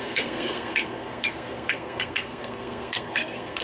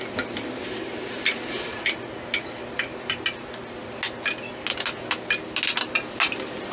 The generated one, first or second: first